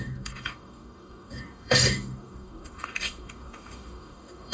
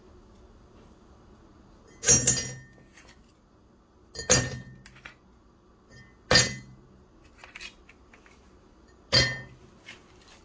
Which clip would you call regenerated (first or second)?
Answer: first